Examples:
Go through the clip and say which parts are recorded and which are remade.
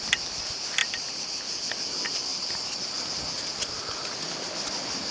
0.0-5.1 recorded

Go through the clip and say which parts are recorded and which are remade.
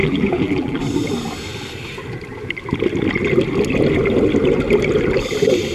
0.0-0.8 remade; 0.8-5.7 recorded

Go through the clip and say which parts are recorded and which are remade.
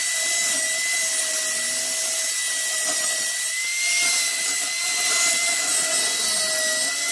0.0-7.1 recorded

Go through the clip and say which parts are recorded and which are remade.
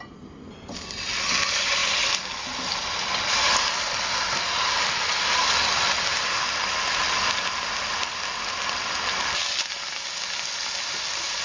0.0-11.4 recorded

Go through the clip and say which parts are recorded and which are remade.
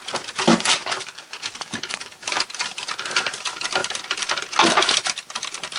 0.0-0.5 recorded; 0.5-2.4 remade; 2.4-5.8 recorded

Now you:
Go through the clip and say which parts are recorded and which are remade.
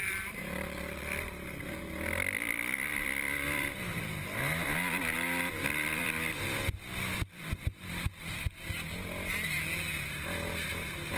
0.0-4.4 remade; 4.4-5.1 recorded; 5.1-8.3 remade; 8.3-11.2 recorded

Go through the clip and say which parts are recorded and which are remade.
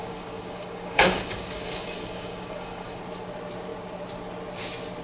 0.0-3.0 remade; 3.0-5.0 recorded